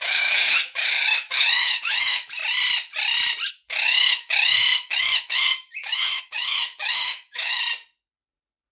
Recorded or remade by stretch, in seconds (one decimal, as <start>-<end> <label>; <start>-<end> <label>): 0.0-2.4 remade; 2.4-3.5 recorded; 3.5-7.6 remade; 7.6-8.7 recorded